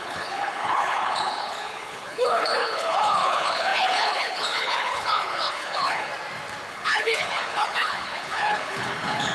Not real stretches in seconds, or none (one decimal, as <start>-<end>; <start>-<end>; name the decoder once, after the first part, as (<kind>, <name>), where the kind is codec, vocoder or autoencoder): 0.0-6.1 (codec, HILCodec); 6.7-9.3